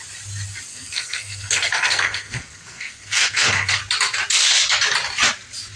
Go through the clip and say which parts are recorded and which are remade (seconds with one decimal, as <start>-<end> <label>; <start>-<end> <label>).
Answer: 0.0-0.7 recorded; 0.7-3.8 remade; 3.8-5.8 recorded